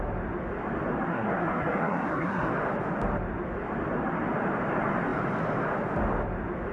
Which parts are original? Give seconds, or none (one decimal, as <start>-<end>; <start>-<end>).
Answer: 0.0-1.1; 2.5-6.7